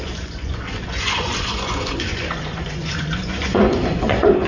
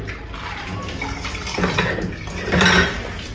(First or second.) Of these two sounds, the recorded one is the second